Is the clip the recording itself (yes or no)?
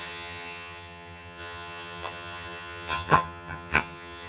no